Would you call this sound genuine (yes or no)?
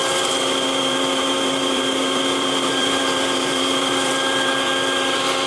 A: no